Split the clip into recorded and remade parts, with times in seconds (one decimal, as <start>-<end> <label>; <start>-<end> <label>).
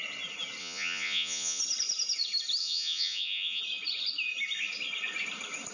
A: 0.0-0.6 recorded; 0.6-1.6 remade; 1.6-2.6 recorded; 2.6-3.6 remade; 3.6-5.7 recorded